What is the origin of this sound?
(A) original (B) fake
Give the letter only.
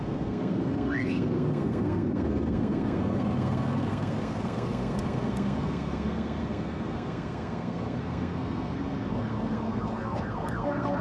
B